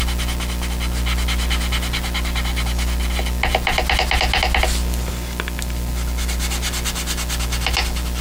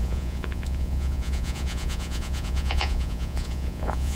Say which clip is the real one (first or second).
first